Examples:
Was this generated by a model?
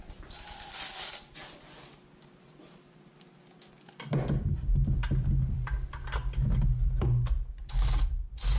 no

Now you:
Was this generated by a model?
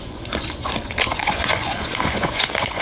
yes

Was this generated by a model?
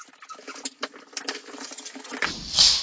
no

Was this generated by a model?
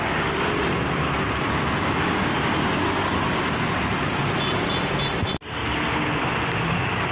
no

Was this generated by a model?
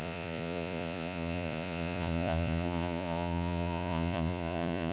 yes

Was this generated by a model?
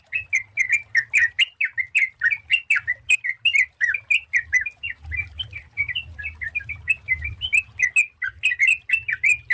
no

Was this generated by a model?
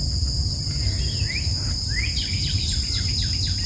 no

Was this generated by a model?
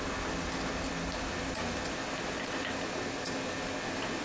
no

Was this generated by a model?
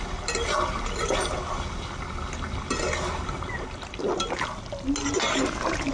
no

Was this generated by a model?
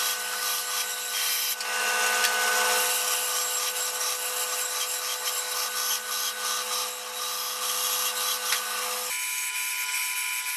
no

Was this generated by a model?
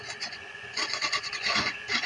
yes